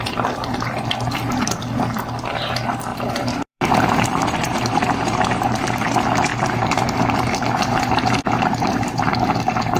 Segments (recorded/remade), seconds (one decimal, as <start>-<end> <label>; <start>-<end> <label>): 0.0-2.9 recorded; 2.9-5.7 remade; 5.7-6.3 recorded; 6.3-9.3 remade; 9.3-9.8 recorded

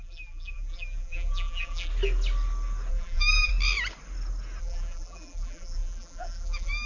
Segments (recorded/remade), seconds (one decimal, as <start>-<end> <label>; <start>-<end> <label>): 0.0-1.9 remade; 1.9-2.9 recorded; 2.9-3.5 remade; 3.5-4.6 recorded; 4.6-6.9 remade

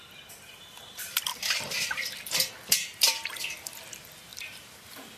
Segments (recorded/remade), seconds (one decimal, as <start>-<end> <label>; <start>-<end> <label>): 0.0-1.3 recorded; 1.3-2.5 remade; 2.5-4.3 recorded; 4.3-4.8 remade; 4.8-5.2 recorded

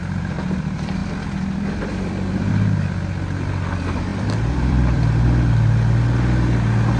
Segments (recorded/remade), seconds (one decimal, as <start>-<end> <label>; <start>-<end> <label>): 0.0-0.6 remade; 0.6-1.0 recorded; 1.0-2.5 remade; 2.5-4.1 recorded; 4.1-5.7 remade; 5.7-7.0 recorded

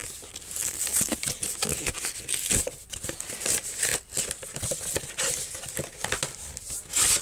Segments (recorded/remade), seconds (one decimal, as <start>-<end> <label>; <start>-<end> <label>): 0.0-0.6 recorded; 0.6-1.1 remade; 1.1-7.2 recorded